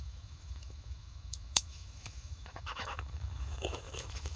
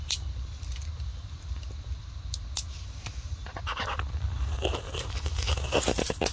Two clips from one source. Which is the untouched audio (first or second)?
second